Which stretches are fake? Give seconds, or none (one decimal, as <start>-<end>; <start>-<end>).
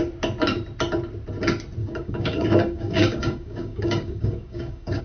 1.8-5.0